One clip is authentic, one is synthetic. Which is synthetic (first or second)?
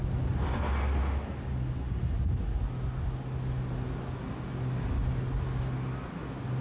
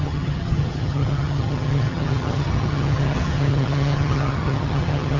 second